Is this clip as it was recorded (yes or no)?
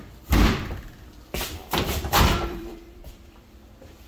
no